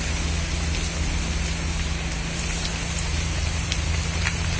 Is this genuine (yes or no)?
yes